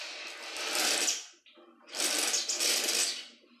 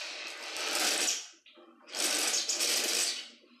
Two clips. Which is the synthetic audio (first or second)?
second